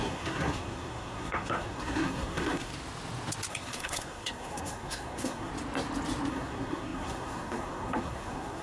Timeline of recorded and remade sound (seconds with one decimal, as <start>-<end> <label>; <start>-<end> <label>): 0.0-2.7 remade; 2.7-3.5 recorded; 3.5-5.5 remade; 5.5-6.3 recorded; 6.3-8.6 remade